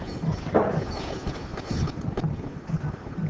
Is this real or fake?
real